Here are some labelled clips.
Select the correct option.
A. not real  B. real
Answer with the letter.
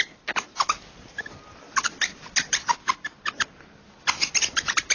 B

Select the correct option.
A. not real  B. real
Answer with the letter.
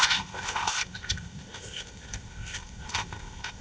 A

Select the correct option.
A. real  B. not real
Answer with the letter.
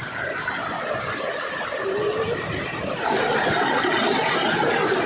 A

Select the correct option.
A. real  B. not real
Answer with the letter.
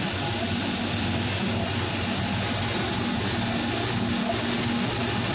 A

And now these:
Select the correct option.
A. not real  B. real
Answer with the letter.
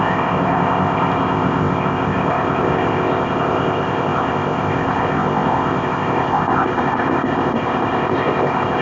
A